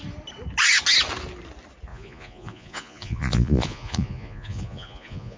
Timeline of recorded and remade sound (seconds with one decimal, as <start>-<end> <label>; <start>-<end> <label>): 0.0-1.9 recorded; 1.9-5.4 remade